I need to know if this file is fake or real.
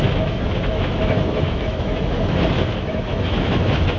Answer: fake